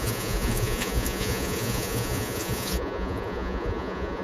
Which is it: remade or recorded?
remade